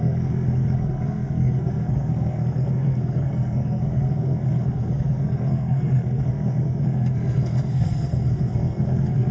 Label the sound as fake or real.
fake